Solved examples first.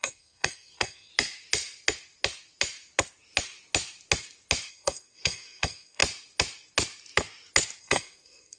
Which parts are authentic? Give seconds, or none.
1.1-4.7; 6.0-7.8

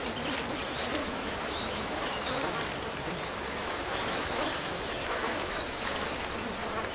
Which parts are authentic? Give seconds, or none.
0.0-1.0; 2.3-3.6; 6.1-6.9

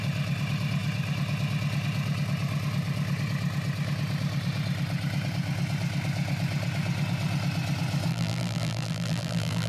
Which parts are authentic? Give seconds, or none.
0.0-8.1

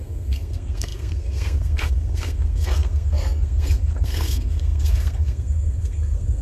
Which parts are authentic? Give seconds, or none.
none

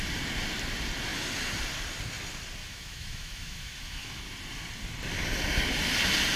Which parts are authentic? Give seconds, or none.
0.0-2.6; 4.2-6.4